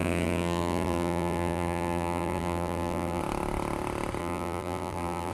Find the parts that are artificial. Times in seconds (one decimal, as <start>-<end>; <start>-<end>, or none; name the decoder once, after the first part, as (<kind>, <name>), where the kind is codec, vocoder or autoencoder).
0.0-3.2 (vocoder, BigVGAN v2); 4.2-5.3